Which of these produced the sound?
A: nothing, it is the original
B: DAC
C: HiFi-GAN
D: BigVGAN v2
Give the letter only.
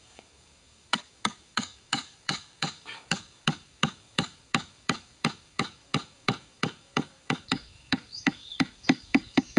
B